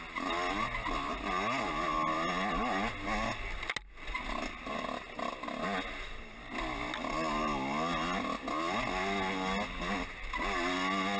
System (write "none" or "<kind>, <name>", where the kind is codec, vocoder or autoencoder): none